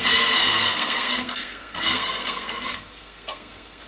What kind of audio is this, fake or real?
fake